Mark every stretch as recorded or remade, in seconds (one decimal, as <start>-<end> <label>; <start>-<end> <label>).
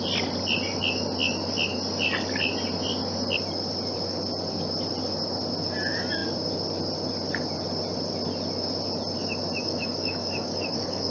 0.0-9.6 recorded; 9.6-11.1 remade